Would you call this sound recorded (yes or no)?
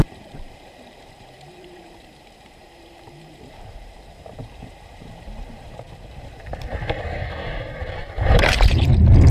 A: no